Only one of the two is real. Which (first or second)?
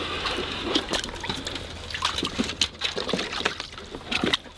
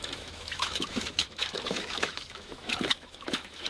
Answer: first